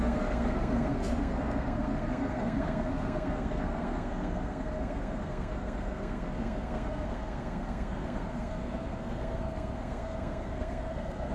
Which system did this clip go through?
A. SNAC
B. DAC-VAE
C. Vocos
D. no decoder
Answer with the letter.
A